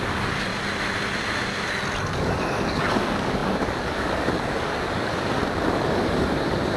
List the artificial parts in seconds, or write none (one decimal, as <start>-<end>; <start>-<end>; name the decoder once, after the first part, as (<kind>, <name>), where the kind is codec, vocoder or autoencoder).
0.0-0.5 (codec, DAC); 2.0-5.1; 5.7-6.8